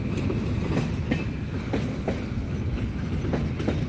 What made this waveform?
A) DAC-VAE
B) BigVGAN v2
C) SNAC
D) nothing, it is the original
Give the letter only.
D